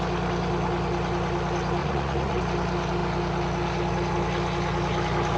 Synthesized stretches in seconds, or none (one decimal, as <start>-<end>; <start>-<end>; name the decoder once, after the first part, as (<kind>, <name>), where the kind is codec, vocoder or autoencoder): 1.8-2.4 (vocoder, Vocos)